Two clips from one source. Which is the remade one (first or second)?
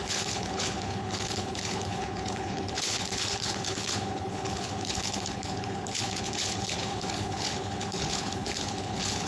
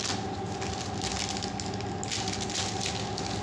first